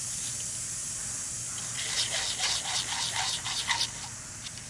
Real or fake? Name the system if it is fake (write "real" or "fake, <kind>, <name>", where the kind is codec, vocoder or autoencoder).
real